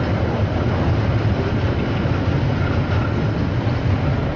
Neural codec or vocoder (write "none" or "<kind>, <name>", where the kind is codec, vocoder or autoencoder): none